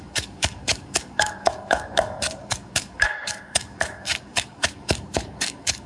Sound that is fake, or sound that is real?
fake